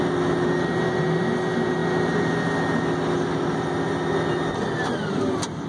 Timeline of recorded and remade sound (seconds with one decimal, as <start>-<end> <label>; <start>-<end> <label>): 0.0-5.7 recorded